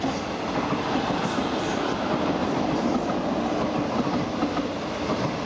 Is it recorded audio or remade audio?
recorded